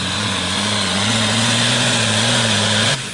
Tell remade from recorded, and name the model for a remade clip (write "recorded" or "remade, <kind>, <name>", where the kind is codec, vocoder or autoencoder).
remade, vocoder, Vocos